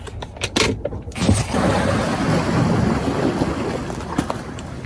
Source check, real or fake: real